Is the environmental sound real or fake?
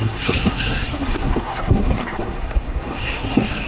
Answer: fake